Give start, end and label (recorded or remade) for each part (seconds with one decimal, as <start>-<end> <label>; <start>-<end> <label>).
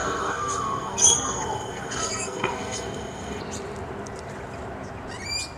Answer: 0.0-3.4 remade; 3.4-5.6 recorded